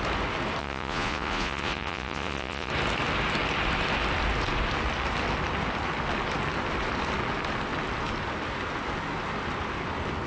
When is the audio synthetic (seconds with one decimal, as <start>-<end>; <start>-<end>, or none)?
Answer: 0.6-2.7